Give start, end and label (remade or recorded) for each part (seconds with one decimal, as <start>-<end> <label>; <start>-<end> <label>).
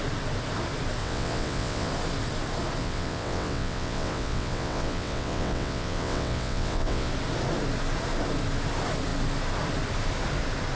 0.0-1.0 recorded; 1.0-1.9 remade; 1.9-2.8 recorded; 2.8-7.1 remade; 7.1-10.8 recorded